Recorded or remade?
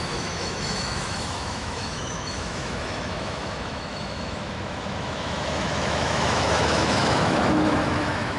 remade